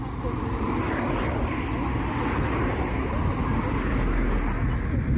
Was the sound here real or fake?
real